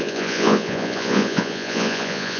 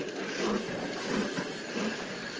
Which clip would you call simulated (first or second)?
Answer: first